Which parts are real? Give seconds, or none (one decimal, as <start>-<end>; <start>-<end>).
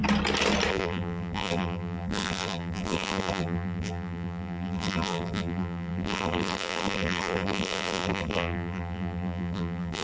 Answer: 0.0-0.7